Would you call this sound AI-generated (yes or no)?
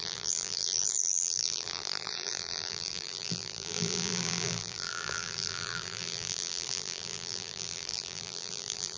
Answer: yes